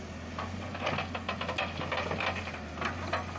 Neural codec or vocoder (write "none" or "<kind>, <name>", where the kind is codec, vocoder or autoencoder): none